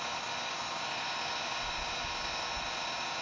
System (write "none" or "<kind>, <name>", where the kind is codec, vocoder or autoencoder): none